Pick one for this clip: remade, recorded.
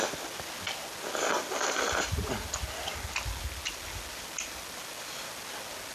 recorded